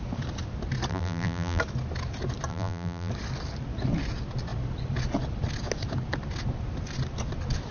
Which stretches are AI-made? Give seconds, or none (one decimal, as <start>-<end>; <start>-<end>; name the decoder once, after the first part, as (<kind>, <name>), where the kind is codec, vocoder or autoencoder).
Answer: 0.9-1.6 (vocoder, BigVGAN v2); 2.5-3.1